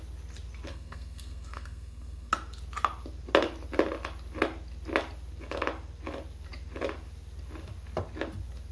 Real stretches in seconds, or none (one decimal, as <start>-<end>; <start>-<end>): 0.0-0.7; 2.3-8.7